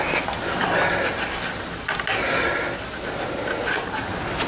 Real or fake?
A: real